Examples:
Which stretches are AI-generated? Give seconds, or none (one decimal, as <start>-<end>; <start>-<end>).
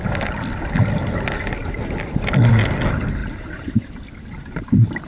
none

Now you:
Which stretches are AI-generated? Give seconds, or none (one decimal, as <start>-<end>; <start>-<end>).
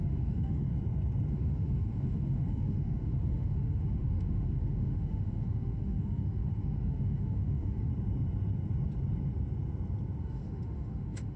0.0-0.7; 1.3-7.9; 10.2-11.4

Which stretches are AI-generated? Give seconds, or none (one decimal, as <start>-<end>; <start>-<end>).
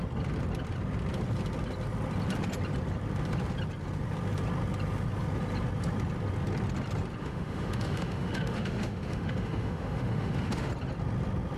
7.2-10.7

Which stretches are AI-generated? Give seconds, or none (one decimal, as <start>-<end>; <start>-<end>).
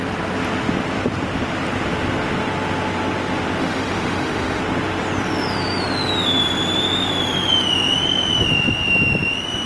3.6-4.6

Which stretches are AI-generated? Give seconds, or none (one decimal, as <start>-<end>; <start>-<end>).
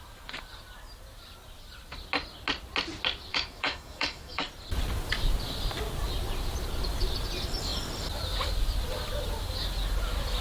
3.3-4.4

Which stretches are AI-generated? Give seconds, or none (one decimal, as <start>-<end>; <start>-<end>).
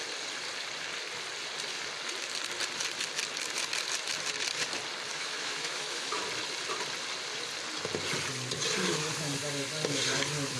5.1-6.2